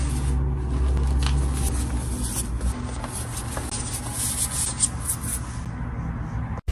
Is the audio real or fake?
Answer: real